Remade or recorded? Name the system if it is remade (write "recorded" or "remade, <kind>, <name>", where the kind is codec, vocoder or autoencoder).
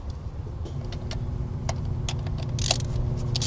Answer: recorded